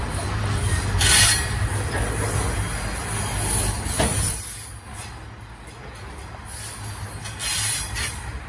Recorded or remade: recorded